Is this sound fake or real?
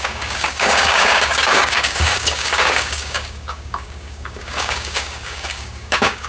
fake